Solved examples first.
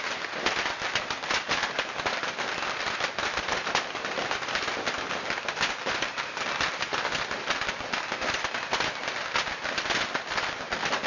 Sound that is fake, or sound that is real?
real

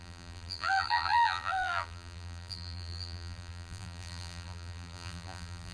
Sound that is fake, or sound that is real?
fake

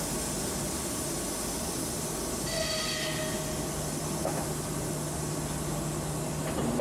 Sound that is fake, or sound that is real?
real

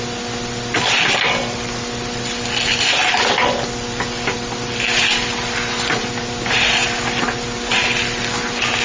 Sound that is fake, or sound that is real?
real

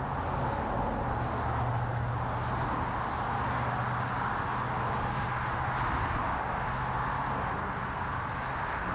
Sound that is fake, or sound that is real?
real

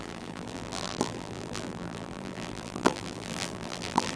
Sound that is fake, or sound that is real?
fake